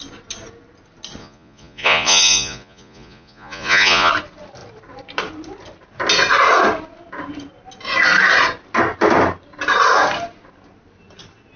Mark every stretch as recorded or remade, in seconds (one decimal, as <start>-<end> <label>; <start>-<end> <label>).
0.0-1.2 recorded; 1.2-4.1 remade; 4.1-11.6 recorded